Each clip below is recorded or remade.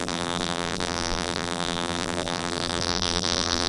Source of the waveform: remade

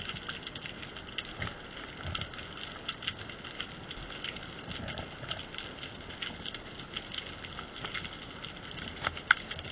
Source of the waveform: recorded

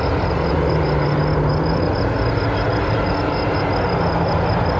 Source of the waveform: recorded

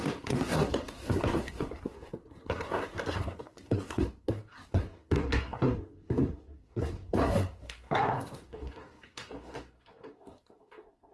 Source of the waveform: remade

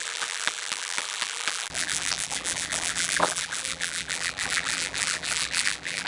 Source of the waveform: remade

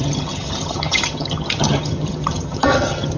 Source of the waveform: remade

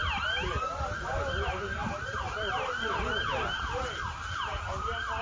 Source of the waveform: recorded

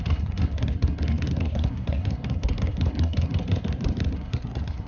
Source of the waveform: remade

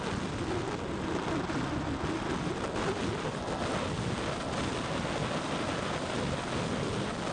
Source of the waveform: recorded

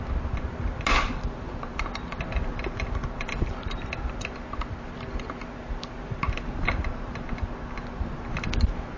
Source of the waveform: recorded